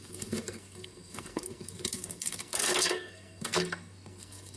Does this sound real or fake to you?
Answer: fake